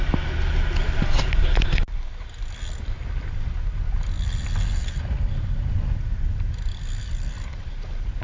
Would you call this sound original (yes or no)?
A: yes